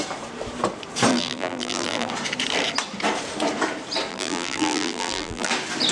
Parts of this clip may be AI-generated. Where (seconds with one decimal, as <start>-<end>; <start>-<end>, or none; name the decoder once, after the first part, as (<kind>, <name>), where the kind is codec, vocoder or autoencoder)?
1.1-2.1 (vocoder, BigVGAN v2); 4.1-5.5